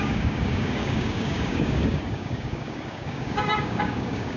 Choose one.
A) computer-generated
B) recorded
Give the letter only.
A